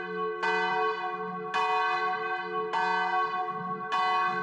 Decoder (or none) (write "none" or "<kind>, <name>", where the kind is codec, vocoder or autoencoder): none